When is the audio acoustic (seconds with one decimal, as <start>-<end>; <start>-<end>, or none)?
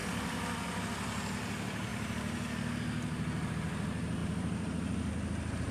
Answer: 0.8-4.2; 5.1-5.7